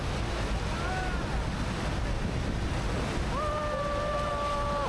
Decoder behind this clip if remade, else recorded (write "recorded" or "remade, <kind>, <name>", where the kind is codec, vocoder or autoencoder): recorded